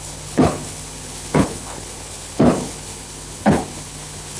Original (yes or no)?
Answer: no